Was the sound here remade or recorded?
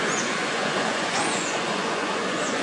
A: remade